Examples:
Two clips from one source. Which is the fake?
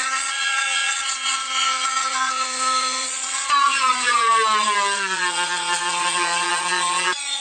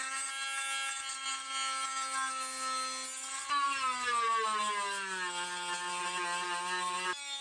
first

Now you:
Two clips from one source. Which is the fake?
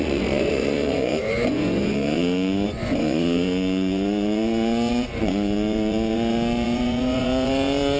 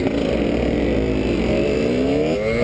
first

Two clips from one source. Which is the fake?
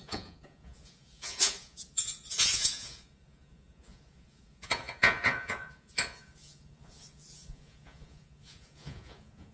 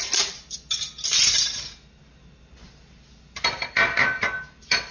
first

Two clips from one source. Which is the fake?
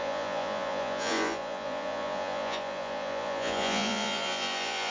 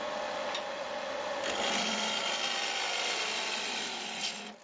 first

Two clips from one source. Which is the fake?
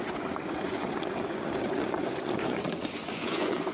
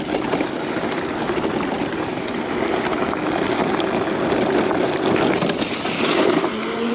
first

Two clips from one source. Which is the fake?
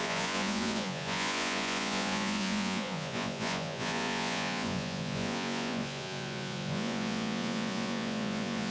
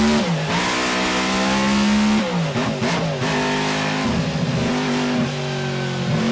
first